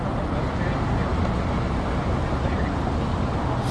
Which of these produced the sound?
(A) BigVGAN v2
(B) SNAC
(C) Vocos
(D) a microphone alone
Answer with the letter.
D